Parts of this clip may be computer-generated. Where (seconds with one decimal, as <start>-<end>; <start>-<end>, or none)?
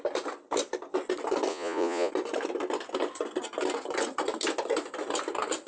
1.5-2.1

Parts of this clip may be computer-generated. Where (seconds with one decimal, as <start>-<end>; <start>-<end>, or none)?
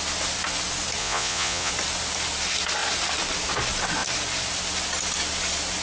1.0-1.7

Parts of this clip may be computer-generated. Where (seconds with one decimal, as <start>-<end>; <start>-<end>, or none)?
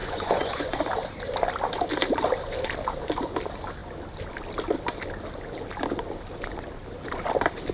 0.0-0.8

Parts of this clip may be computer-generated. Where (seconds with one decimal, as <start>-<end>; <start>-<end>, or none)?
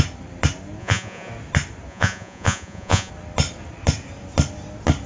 0.8-1.3; 1.9-3.1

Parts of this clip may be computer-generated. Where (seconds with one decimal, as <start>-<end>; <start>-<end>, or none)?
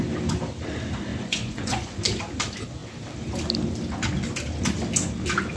1.1-2.0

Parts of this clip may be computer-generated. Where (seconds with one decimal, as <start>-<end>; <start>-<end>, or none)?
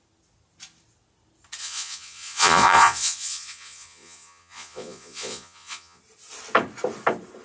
1.6-6.0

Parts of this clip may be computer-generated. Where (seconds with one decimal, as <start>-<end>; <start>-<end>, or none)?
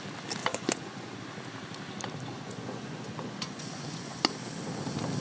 0.4-1.2; 2.3-4.3